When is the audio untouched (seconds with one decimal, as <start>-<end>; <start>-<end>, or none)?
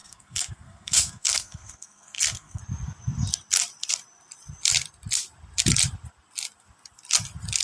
2.6-7.6